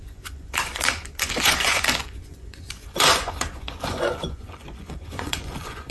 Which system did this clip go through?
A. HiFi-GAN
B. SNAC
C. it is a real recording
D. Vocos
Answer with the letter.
D